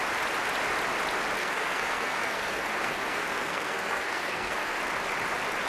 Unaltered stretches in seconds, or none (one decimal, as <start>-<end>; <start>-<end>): 0.0-1.4; 4.8-5.7